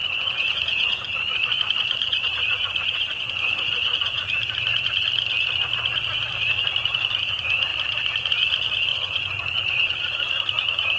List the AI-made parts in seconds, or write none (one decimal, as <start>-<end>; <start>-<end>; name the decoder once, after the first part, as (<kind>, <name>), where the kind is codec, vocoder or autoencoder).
0.0-4.3 (vocoder, Vocos); 8.9-10.0